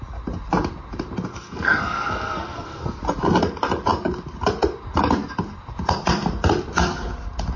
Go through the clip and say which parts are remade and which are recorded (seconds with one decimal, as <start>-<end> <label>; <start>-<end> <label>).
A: 0.0-1.3 recorded; 1.3-3.0 remade; 3.0-7.6 recorded